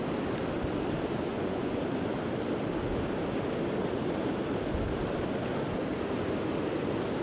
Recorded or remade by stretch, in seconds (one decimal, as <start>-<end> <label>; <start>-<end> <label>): 0.0-1.3 recorded; 1.3-1.8 remade; 1.8-7.2 recorded